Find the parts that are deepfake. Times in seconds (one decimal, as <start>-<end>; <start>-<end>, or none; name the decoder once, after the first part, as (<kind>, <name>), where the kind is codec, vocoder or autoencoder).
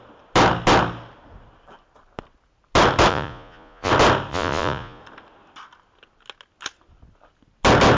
3.1-3.9 (vocoder, Vocos); 4.3-5.0